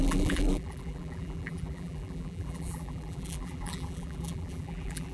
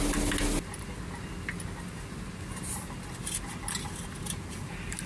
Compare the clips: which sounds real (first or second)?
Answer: second